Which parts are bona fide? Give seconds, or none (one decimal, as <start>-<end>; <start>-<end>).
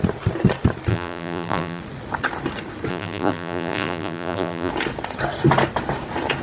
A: 0.0-0.9; 1.8-2.9; 4.7-6.4